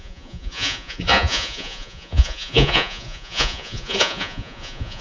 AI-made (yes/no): yes